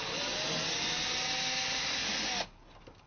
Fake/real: real